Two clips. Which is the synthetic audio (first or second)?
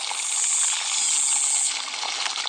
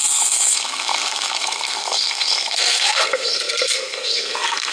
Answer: second